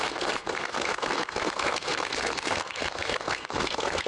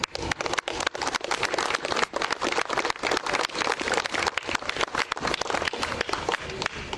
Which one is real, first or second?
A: second